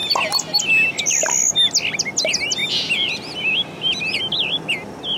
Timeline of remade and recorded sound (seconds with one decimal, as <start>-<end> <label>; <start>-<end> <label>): 0.0-2.6 recorded; 2.6-4.2 remade; 4.2-5.2 recorded